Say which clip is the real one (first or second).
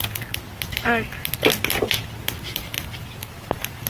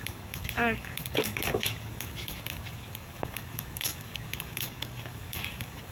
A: first